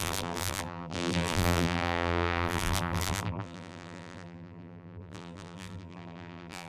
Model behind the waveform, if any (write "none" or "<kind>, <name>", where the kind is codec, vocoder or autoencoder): vocoder, BigVGAN v2